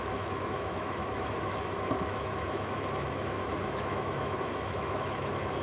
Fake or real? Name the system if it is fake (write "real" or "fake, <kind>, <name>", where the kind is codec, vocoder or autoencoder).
fake, autoencoder, DAC-VAE